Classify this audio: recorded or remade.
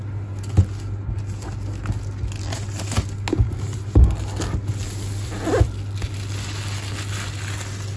recorded